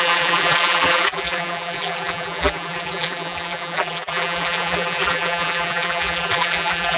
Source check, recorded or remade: remade